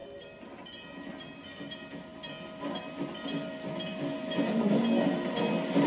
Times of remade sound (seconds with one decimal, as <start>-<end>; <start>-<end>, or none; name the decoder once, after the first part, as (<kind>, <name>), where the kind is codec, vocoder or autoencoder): none